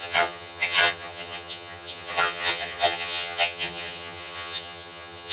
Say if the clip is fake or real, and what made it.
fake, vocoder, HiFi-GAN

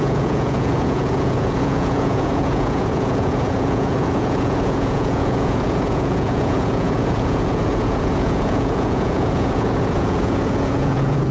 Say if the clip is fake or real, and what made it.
fake, vocoder, Vocos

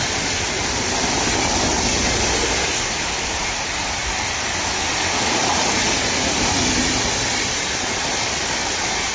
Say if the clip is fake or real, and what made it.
real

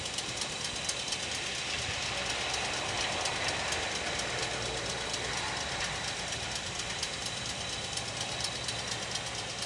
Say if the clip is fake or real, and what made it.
real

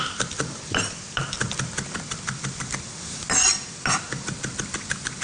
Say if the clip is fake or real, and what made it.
fake, vocoder, BigVGAN v2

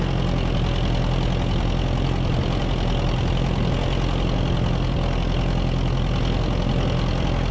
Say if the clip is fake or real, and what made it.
real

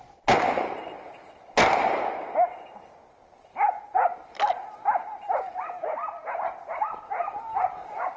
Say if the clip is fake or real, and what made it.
real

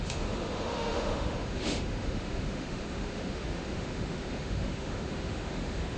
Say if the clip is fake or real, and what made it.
fake, autoencoder, DAC-VAE